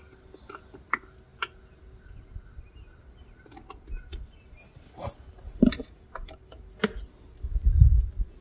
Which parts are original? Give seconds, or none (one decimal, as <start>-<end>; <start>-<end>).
0.0-8.4

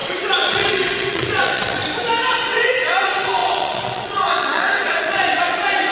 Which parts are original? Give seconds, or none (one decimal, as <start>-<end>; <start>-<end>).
1.8-2.3

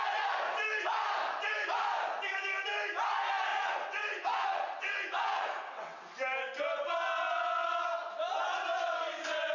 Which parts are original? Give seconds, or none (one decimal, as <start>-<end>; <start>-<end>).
0.0-3.5; 6.0-9.5

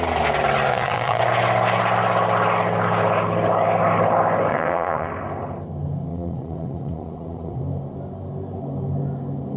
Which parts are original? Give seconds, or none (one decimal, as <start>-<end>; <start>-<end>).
0.0-0.7; 1.2-4.5; 5.1-6.1; 7.6-9.6